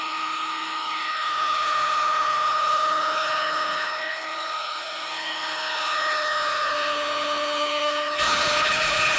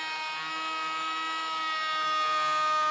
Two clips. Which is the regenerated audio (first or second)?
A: first